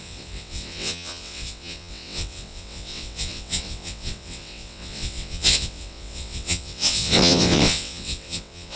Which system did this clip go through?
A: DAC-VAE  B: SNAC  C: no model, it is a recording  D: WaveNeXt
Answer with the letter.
D